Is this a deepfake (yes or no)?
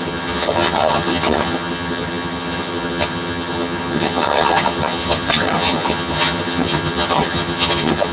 yes